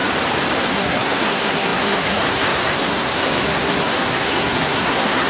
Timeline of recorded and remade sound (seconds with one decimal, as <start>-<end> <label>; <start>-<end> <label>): 0.0-0.6 recorded; 0.6-5.3 remade

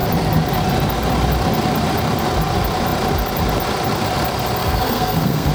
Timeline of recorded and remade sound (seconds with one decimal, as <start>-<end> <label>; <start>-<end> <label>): 0.0-4.6 recorded; 4.6-5.5 remade

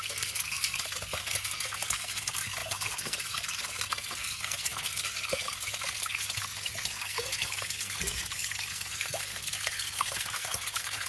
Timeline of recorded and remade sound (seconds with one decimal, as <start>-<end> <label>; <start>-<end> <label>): 0.0-11.1 remade

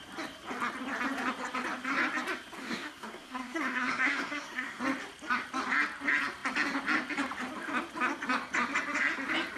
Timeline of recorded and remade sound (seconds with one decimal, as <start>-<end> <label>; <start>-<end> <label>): 0.0-2.6 recorded; 2.6-4.8 remade; 4.8-9.6 recorded

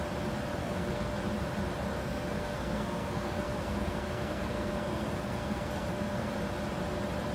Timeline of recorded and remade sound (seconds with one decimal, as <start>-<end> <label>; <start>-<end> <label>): 0.0-0.6 recorded; 0.6-1.2 remade; 1.2-1.9 recorded; 1.9-6.3 remade; 6.3-7.3 recorded

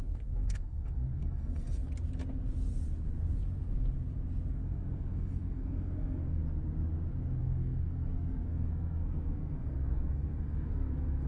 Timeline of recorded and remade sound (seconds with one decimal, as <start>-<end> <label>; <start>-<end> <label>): 0.0-1.8 remade; 1.8-4.5 recorded; 4.5-6.4 remade; 6.4-7.4 recorded; 7.4-11.3 remade